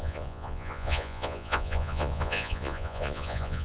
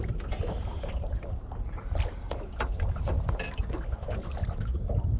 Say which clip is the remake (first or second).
first